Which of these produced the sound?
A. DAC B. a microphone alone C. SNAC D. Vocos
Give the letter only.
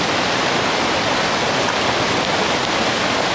B